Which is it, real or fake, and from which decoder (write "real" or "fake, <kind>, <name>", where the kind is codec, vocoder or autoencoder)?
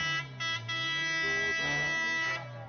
real